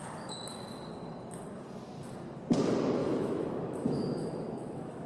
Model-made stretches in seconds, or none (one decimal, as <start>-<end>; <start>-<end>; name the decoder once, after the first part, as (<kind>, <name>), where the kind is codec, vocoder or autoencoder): 3.0-5.1 (autoencoder, DAC-VAE)